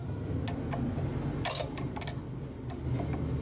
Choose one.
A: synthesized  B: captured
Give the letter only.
B